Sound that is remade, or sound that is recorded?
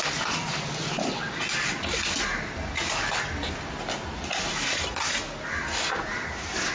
recorded